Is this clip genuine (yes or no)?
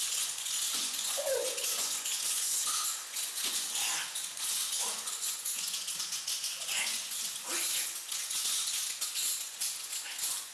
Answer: no